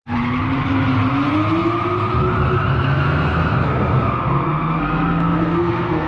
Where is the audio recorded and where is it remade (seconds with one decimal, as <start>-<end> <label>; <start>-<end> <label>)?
0.0-2.7 recorded; 2.7-6.1 remade